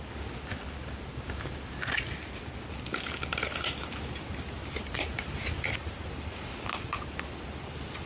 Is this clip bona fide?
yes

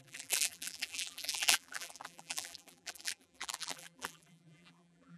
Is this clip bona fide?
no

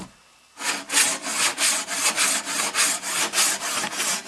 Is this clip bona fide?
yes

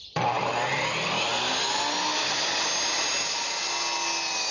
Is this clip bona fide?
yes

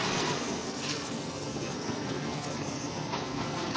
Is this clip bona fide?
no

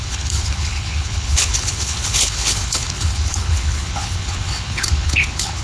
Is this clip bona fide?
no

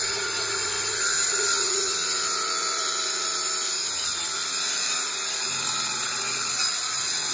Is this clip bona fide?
no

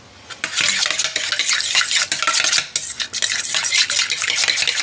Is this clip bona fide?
yes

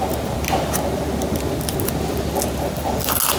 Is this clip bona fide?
yes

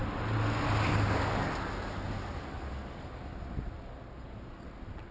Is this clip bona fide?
yes